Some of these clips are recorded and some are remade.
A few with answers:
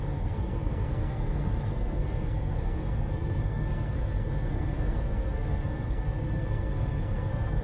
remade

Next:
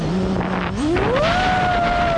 recorded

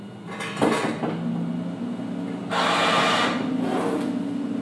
recorded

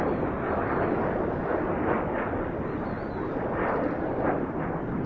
recorded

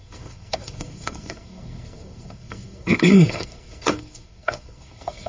remade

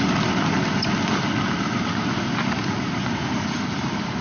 recorded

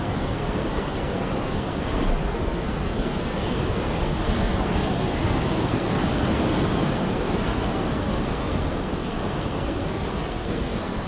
remade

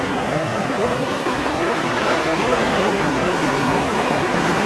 remade